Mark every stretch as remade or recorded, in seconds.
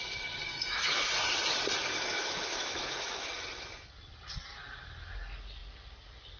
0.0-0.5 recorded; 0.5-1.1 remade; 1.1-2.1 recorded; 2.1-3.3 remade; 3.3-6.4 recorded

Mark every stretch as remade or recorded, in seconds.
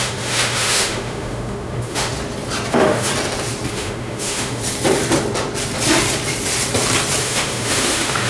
0.0-2.1 remade; 2.1-2.7 recorded; 2.7-3.1 remade; 3.1-3.7 recorded; 3.7-4.6 remade; 4.6-7.2 recorded; 7.2-8.3 remade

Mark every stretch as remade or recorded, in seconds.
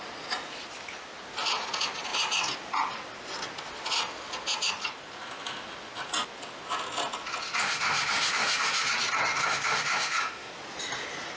0.0-7.6 recorded; 7.6-8.9 remade; 8.9-9.4 recorded; 9.4-10.5 remade; 10.5-11.4 recorded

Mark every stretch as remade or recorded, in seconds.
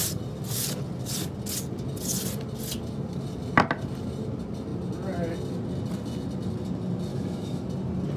0.0-7.1 recorded; 7.1-7.6 remade; 7.6-8.2 recorded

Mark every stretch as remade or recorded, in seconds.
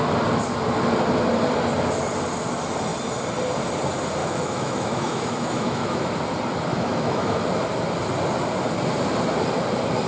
0.0-4.2 recorded; 4.2-6.1 remade; 6.1-6.7 recorded; 6.7-7.4 remade; 7.4-10.1 recorded